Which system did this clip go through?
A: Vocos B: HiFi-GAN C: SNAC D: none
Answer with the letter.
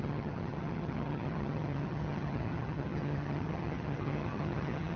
B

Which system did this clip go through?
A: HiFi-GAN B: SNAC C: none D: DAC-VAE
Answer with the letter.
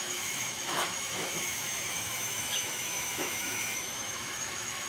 D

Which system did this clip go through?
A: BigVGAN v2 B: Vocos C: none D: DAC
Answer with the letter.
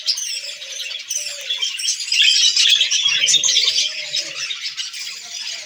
C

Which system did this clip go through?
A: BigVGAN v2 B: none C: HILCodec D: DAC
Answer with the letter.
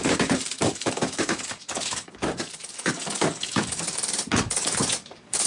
D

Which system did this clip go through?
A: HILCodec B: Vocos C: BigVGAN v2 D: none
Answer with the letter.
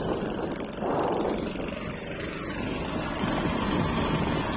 D